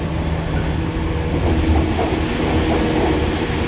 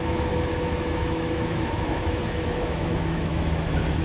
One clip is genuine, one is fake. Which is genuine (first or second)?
first